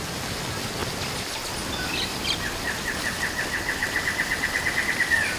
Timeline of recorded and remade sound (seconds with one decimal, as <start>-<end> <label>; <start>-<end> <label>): 0.0-5.4 recorded